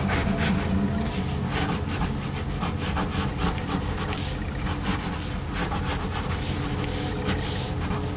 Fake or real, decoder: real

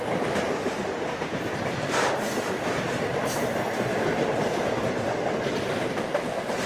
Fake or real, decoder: real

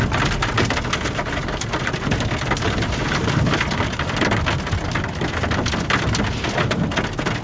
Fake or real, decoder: real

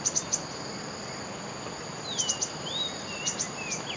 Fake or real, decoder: real